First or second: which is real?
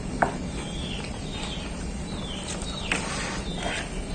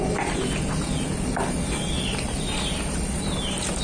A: second